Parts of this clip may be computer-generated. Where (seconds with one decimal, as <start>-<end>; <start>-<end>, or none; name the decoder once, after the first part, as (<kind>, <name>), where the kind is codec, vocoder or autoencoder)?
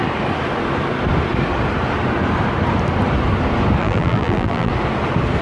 3.8-4.7 (vocoder, BigVGAN v2)